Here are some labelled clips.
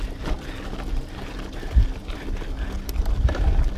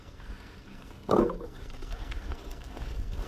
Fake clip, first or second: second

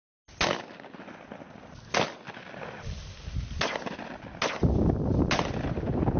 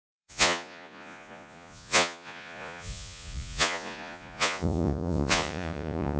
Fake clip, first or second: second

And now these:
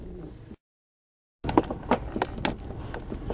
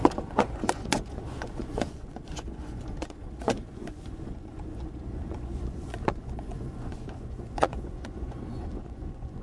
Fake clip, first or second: second